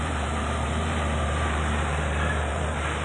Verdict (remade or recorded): remade